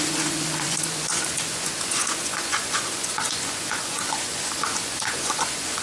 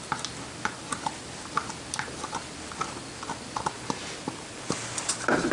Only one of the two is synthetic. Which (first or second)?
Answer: first